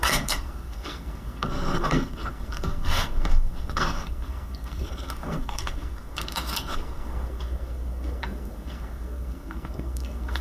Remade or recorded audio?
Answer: remade